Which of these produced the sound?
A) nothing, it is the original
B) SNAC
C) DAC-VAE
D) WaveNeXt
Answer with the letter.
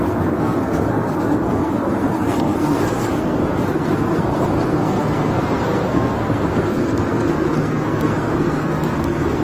B